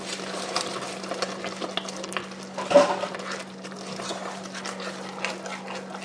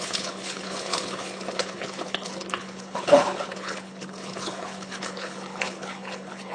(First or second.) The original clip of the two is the first